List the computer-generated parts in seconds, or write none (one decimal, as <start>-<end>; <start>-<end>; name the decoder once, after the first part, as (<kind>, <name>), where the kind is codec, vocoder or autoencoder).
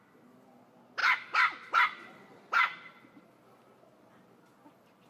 1.0-4.1 (vocoder, BigVGAN v2)